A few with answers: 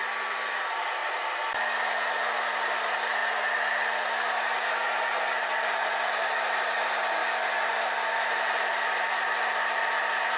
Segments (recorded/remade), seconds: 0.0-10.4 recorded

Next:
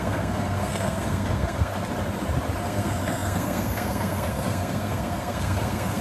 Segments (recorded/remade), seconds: 0.0-1.7 remade; 1.7-2.6 recorded; 2.6-6.0 remade

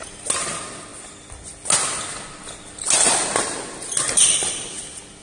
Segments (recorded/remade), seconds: 0.0-5.2 recorded

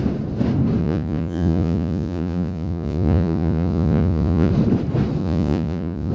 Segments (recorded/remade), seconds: 0.0-0.8 recorded; 0.8-4.5 remade; 4.5-5.2 recorded; 5.2-6.1 remade